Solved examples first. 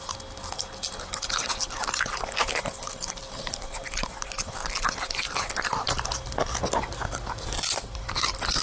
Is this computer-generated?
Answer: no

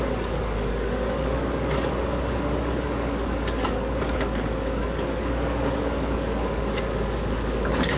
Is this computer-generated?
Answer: yes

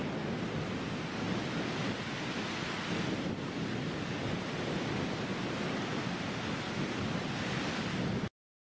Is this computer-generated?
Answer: no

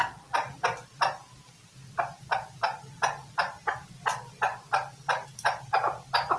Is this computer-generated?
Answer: no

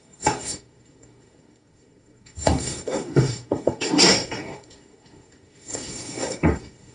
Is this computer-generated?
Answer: yes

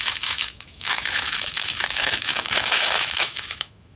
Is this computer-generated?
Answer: yes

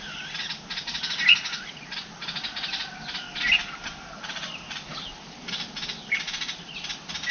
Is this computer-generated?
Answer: no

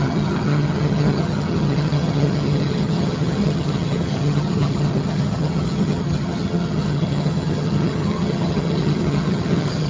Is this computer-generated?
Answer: yes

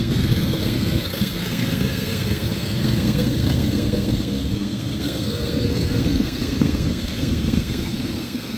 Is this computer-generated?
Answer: yes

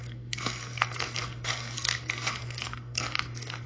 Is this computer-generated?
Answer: yes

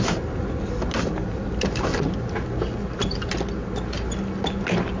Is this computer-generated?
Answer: no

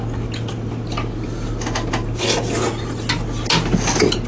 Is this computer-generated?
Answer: no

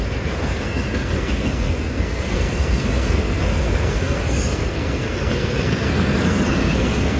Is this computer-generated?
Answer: yes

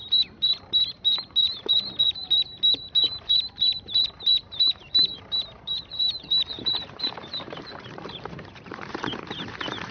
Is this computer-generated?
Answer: yes